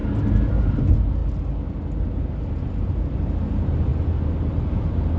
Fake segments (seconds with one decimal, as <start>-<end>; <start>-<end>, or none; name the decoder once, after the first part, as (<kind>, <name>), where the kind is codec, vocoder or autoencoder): none